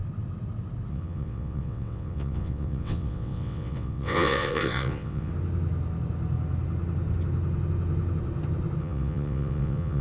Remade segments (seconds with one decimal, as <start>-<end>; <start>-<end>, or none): 0.9-5.3; 8.8-10.0